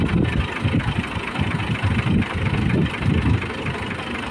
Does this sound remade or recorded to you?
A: recorded